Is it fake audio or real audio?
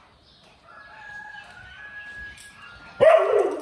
real